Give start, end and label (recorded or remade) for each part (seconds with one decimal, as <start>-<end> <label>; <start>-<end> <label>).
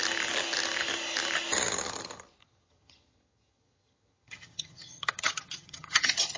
0.0-2.4 recorded; 2.4-6.4 remade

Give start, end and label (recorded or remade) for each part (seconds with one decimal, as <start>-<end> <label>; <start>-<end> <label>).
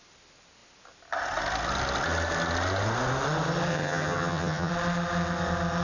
0.0-3.7 recorded; 3.7-4.7 remade; 4.7-5.8 recorded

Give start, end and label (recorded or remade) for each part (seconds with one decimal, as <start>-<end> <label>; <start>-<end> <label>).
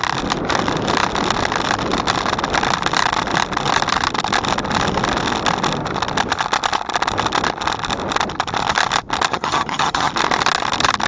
0.0-9.3 recorded; 9.3-10.1 remade; 10.1-11.1 recorded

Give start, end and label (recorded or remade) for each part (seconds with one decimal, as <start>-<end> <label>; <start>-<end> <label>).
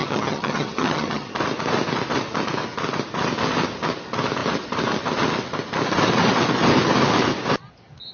0.0-1.3 remade; 1.3-8.1 recorded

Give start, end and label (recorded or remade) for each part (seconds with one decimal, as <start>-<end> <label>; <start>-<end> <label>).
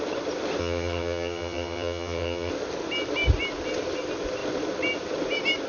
0.0-0.6 recorded; 0.6-2.5 remade; 2.5-5.7 recorded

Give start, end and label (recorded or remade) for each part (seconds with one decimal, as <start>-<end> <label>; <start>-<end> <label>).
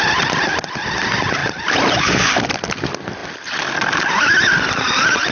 0.0-5.3 recorded